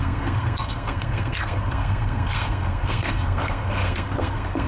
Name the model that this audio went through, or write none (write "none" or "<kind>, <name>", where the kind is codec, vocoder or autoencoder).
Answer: codec, SNAC